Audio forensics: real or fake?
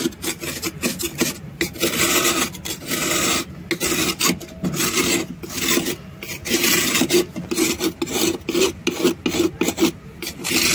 real